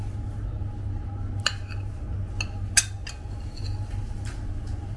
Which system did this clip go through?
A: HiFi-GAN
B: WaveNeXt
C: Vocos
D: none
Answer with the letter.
D